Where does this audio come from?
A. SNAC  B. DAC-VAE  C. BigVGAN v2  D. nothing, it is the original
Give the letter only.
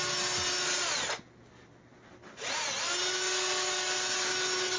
D